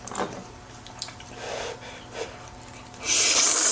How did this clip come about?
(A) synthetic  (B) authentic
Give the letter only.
B